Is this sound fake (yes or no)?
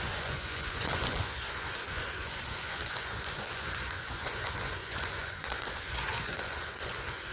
yes